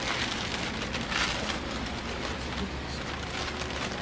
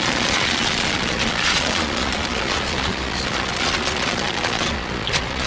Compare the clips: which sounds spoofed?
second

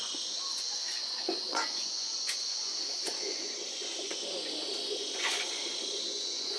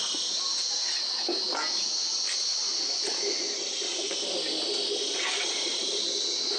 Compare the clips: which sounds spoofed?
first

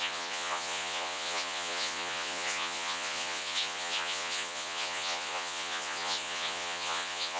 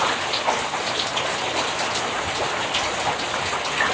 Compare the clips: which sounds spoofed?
first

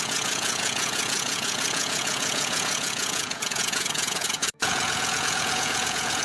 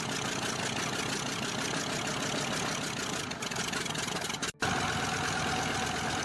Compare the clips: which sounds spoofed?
first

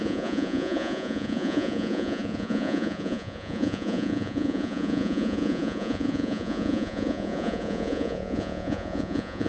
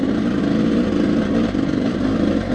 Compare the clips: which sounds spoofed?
first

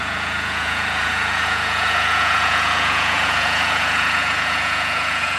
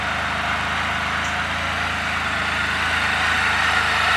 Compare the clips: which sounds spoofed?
first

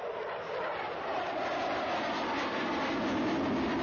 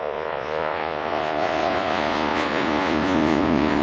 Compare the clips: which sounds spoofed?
second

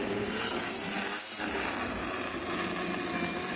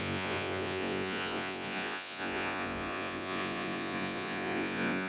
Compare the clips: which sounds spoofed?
second